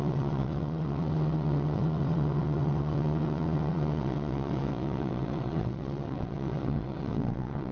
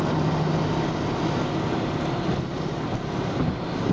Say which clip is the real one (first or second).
second